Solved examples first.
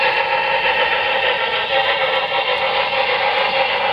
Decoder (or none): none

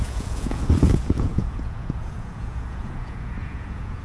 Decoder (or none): vocoder, Vocos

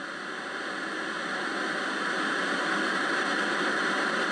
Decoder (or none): none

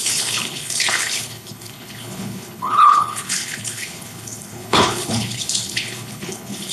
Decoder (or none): codec, HILCodec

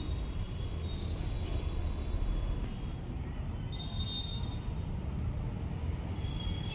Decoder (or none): none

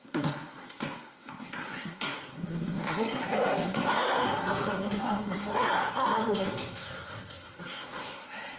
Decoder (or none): codec, SNAC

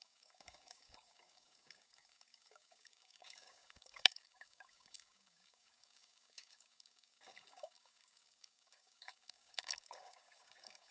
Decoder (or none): codec, DAC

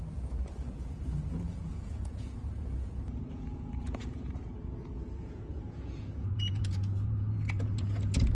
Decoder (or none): vocoder, Vocos